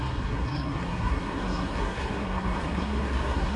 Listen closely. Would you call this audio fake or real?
fake